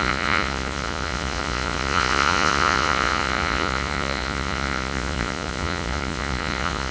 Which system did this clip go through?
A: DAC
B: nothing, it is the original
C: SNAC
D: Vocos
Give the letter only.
D